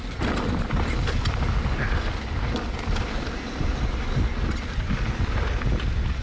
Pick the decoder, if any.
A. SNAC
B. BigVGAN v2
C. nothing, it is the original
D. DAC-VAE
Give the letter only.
C